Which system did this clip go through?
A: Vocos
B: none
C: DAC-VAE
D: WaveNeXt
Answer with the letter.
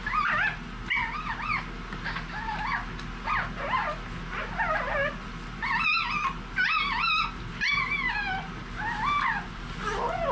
B